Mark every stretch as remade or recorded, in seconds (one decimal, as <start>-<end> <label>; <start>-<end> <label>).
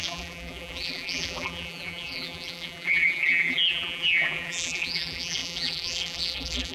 0.0-6.7 remade